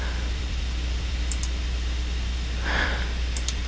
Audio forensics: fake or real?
fake